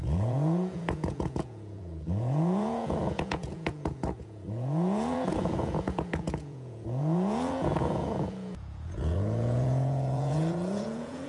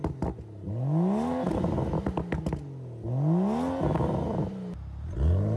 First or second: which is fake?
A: first